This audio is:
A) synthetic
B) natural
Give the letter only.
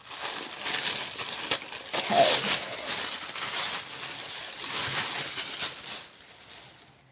B